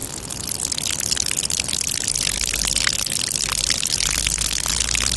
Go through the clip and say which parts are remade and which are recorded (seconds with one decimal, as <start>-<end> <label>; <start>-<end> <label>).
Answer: 0.0-5.2 recorded